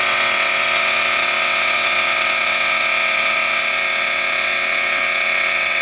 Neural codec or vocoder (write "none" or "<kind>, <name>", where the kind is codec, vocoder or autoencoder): vocoder, WaveNeXt